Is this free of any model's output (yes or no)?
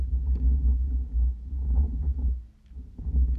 yes